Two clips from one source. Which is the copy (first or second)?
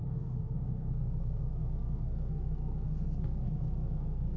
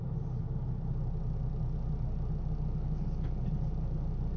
first